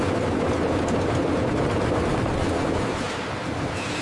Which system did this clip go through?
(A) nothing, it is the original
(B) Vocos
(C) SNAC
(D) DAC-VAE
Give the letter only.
A